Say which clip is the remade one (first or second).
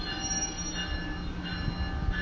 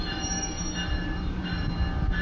second